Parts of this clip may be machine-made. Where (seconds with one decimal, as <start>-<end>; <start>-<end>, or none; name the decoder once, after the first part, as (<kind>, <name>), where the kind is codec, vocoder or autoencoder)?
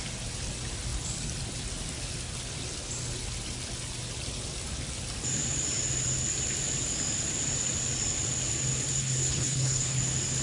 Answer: 9.0-10.0 (codec, HILCodec)